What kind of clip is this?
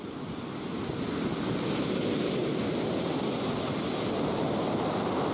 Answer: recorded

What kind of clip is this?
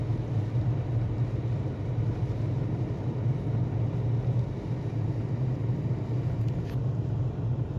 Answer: recorded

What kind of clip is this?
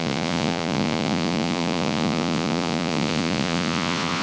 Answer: remade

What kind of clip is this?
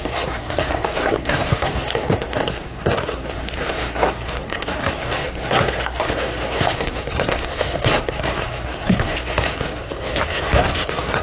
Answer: remade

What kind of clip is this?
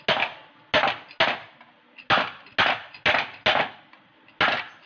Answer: recorded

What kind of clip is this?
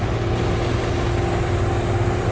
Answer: recorded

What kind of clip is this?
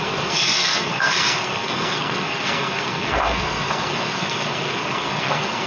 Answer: remade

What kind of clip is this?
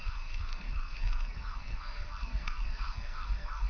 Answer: remade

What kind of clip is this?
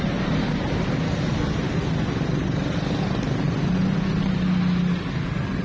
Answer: recorded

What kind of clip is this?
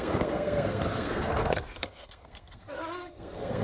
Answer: remade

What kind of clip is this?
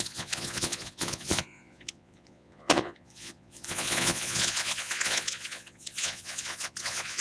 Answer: remade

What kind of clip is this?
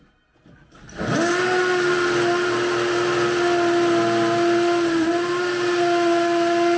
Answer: recorded